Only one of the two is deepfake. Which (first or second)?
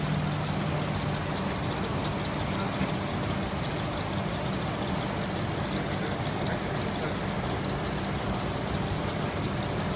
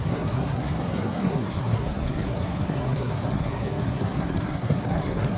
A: second